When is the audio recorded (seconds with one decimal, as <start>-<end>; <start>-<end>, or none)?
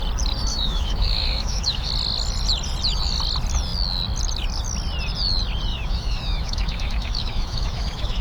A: 0.0-0.5; 1.9-5.7